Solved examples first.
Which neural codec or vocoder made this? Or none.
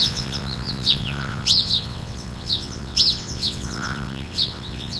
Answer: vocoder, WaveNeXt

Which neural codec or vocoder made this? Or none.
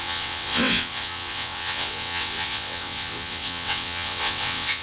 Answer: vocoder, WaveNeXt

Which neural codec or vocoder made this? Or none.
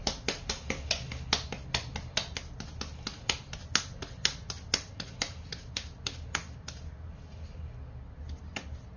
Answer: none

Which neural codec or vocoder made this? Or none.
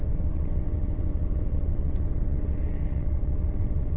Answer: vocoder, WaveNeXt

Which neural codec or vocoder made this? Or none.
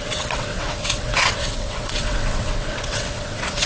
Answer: vocoder, WaveNeXt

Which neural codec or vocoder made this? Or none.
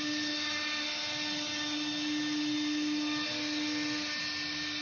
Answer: none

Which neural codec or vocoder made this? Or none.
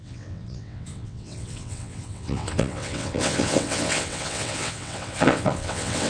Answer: vocoder, WaveNeXt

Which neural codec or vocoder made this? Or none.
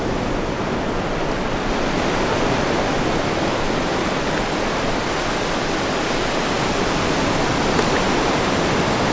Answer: none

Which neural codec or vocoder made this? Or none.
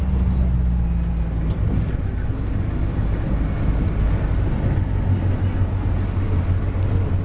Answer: none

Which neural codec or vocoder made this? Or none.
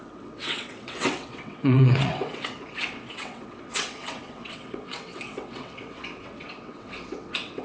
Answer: vocoder, WaveNeXt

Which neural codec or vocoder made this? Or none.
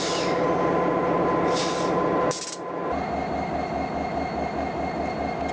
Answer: none